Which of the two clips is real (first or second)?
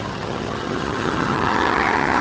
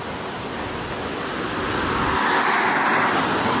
second